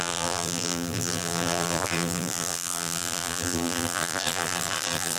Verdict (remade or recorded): remade